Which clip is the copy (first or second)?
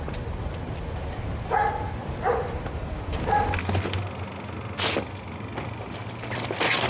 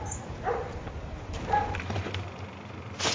second